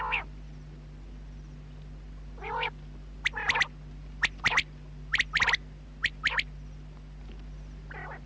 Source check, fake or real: real